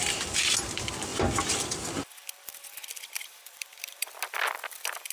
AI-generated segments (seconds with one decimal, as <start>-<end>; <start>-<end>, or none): 1.1-4.2